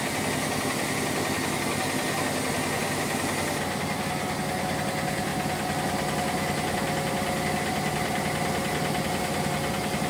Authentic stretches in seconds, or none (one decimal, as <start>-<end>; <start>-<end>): 0.0-10.1